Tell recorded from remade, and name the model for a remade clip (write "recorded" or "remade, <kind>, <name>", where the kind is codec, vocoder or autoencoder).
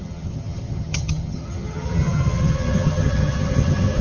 remade, vocoder, HiFi-GAN